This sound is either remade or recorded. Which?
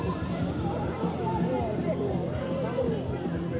recorded